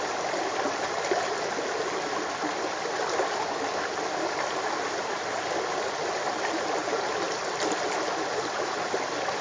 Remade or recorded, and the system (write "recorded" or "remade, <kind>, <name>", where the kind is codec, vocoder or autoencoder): recorded